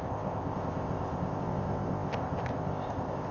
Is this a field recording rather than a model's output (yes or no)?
no